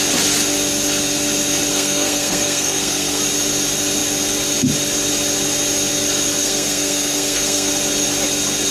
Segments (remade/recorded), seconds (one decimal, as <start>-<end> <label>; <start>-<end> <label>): 0.0-1.7 recorded; 1.7-3.2 remade; 3.2-6.4 recorded; 6.4-7.7 remade; 7.7-8.7 recorded

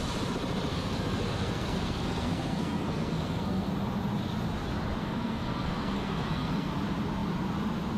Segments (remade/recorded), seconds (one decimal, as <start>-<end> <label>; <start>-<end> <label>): 0.0-0.7 recorded; 0.7-3.7 remade; 3.7-5.0 recorded; 5.0-6.7 remade; 6.7-8.0 recorded